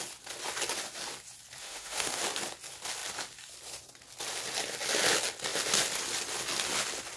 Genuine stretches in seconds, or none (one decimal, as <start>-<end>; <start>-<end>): 0.0-1.6; 2.2-7.2

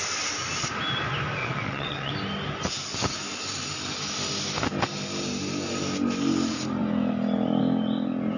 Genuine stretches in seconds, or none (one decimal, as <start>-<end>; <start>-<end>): 0.0-1.4; 2.1-8.4

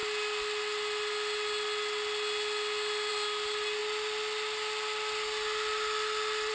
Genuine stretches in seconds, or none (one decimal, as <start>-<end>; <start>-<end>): 0.0-6.5

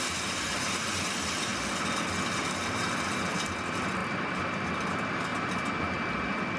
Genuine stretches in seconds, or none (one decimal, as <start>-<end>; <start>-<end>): 1.5-2.4; 5.3-6.1